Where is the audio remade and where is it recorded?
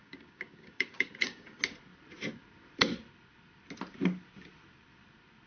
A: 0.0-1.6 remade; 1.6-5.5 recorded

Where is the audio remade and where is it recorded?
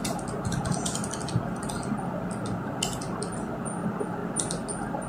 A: 0.0-5.1 recorded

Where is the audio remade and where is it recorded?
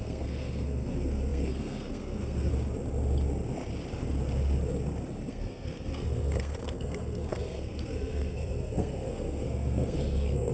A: 0.0-2.5 remade; 2.5-5.3 recorded; 5.3-10.5 remade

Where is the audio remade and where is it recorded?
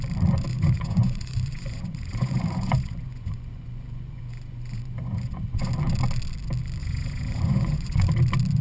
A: 0.0-0.5 recorded; 0.5-5.7 remade; 5.7-6.8 recorded; 6.8-8.1 remade; 8.1-8.6 recorded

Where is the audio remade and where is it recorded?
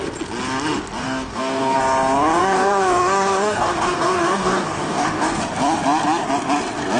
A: 0.0-1.0 recorded; 1.0-1.8 remade; 1.8-2.4 recorded; 2.4-5.4 remade; 5.4-7.0 recorded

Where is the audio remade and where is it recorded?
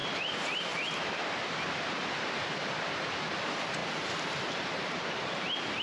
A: 0.0-3.3 remade; 3.3-3.8 recorded; 3.8-4.4 remade; 4.4-5.8 recorded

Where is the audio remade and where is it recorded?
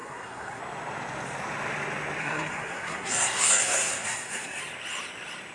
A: 0.0-0.6 remade; 0.6-2.2 recorded; 2.2-4.6 remade; 4.6-5.5 recorded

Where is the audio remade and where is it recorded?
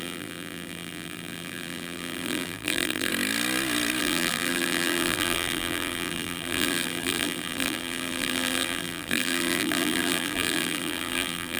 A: 0.0-3.1 remade; 3.1-4.0 recorded; 4.0-11.6 remade